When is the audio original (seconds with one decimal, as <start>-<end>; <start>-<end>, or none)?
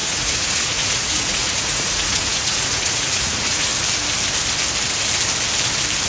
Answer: 3.7-6.1